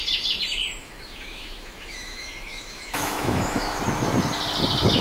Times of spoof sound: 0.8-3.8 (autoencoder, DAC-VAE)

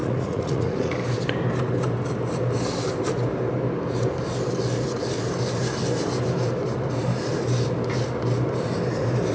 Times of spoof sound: 0.0-0.9 (vocoder, Vocos)

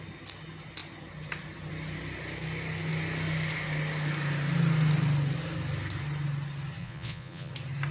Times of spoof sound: 6.8-7.5 (vocoder, Vocos)

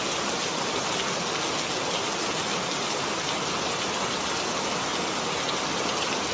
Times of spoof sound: none

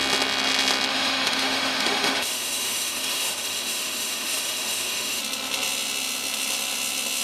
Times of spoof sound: 0.9-5.2 (autoencoder, DAC-VAE)